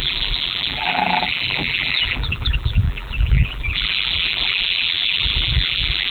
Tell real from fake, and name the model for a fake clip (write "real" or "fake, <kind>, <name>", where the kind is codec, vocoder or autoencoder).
fake, vocoder, BigVGAN v2